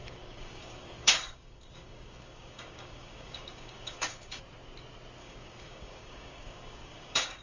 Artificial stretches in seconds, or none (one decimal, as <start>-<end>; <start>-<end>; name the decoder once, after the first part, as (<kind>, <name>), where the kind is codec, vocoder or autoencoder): 0.0-4.4 (codec, DAC); 5.2-7.4